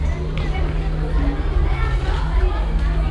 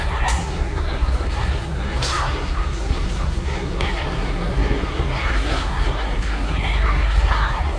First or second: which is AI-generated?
second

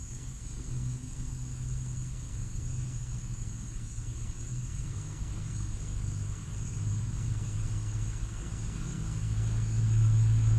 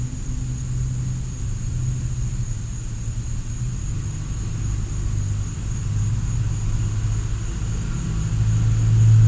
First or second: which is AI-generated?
first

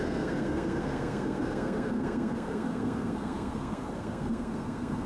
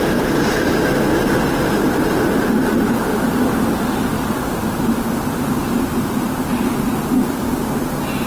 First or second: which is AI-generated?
first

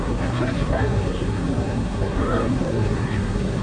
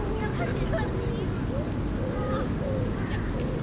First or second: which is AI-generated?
first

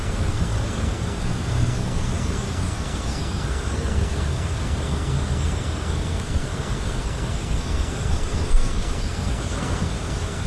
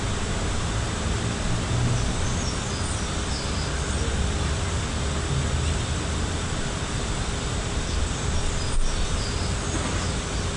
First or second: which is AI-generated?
first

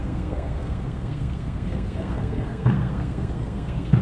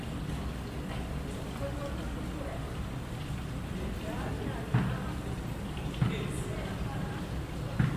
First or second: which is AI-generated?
first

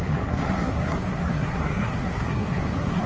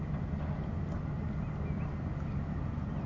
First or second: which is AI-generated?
first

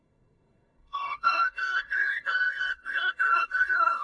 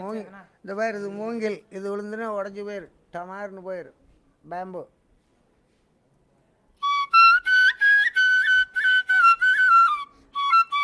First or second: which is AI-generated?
first